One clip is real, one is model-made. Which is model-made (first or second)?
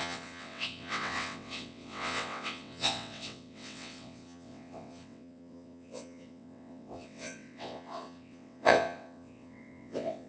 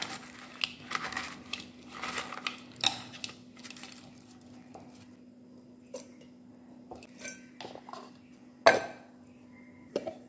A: first